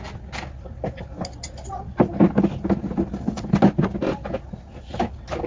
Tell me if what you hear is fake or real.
real